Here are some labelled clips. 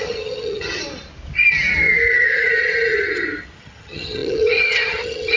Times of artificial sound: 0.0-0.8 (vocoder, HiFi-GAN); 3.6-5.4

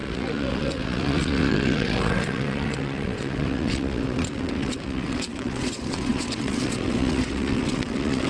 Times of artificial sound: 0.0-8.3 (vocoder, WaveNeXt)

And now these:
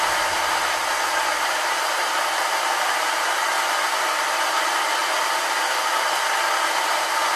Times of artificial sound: 1.3-2.5 (vocoder, BigVGAN v2)